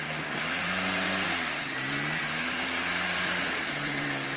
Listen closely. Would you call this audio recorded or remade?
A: remade